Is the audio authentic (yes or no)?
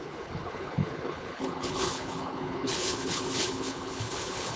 no